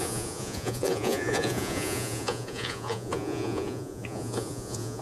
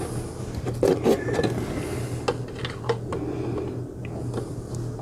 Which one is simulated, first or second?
first